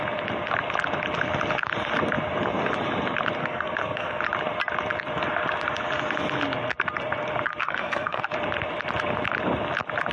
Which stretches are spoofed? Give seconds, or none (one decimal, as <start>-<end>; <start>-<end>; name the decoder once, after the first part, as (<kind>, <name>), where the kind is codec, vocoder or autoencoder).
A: 3.4-4.2 (codec, SNAC); 7.6-8.2